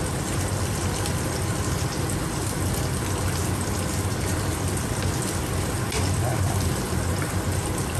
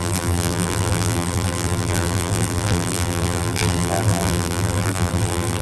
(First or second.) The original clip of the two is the first